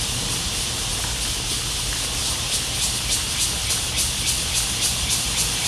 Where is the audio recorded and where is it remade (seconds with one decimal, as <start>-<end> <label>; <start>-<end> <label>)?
0.0-5.7 recorded